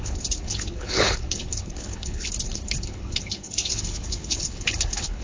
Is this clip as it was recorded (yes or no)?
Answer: no